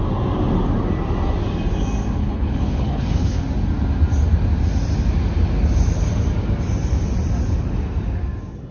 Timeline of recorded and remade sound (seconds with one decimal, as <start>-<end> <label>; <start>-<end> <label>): 0.0-2.2 recorded; 2.2-3.4 remade; 3.4-8.7 recorded